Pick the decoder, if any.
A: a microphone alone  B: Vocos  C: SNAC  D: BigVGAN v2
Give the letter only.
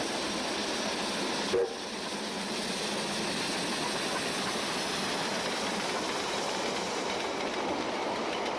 A